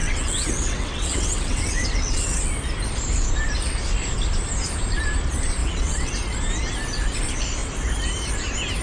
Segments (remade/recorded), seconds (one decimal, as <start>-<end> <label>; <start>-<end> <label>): 0.0-2.4 remade; 2.4-5.6 recorded; 5.6-6.1 remade; 6.1-8.8 recorded